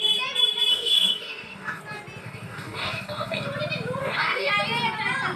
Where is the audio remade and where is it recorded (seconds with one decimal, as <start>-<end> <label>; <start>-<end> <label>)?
0.0-0.7 recorded; 0.7-1.8 remade; 1.8-2.2 recorded; 2.2-3.5 remade; 3.5-4.0 recorded; 4.0-4.5 remade; 4.5-5.4 recorded